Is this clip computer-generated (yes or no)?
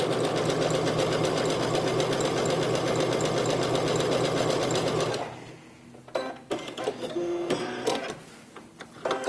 no